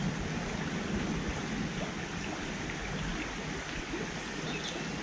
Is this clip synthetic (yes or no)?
no